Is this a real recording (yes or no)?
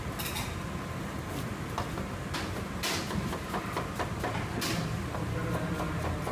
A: yes